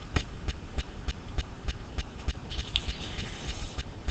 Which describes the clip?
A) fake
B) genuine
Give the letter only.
A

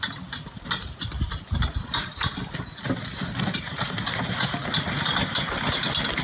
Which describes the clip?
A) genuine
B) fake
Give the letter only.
A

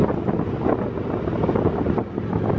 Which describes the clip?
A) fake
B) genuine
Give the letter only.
B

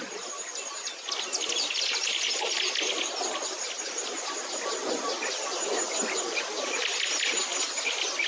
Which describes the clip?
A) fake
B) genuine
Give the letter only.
B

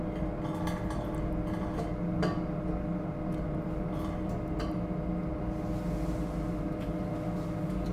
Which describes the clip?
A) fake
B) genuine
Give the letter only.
B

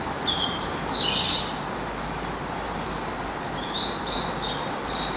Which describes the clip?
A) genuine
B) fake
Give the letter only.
A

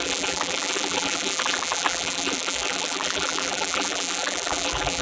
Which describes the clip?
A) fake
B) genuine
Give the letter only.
A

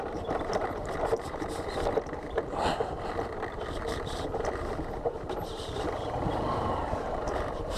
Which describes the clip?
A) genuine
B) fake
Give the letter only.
B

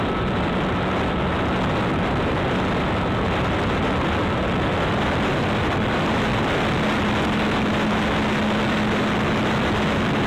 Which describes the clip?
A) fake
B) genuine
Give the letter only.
B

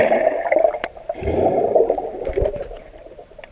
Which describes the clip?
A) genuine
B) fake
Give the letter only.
B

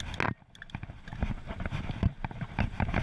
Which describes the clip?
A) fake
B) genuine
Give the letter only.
B